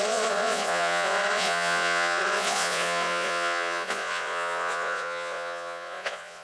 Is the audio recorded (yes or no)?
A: no